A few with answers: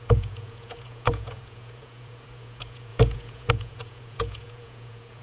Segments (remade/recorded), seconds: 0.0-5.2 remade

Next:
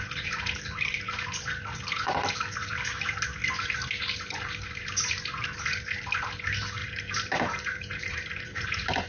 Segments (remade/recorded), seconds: 0.0-6.8 recorded; 6.8-8.7 remade; 8.7-9.1 recorded